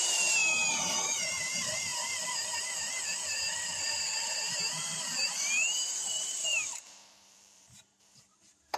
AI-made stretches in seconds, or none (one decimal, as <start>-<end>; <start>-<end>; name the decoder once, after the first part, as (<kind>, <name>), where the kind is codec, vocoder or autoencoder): 0.0-0.4 (vocoder, BigVGAN v2); 1.3-1.9; 5.0-8.8